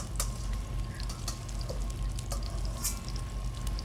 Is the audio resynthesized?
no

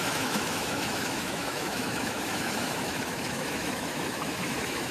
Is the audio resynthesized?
yes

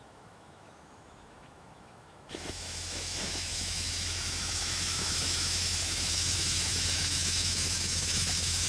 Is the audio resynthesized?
yes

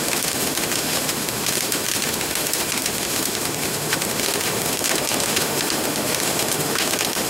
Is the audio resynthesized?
yes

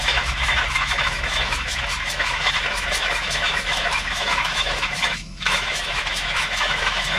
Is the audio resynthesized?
yes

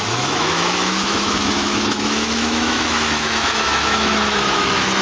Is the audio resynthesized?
yes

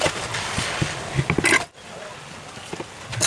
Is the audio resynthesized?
no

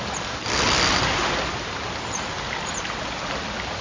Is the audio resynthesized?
no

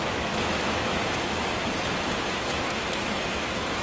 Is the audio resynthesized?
yes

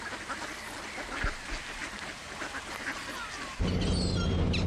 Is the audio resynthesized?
no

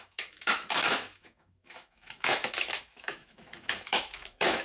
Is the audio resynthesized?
yes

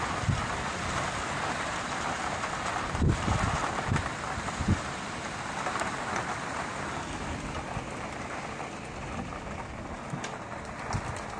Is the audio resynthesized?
no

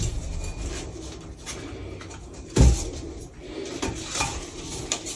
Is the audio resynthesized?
no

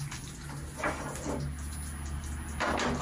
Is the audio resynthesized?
no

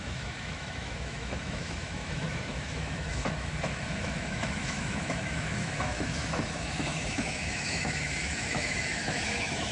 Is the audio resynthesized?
yes